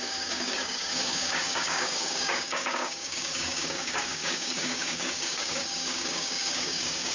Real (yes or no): no